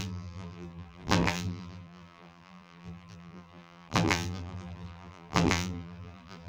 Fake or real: fake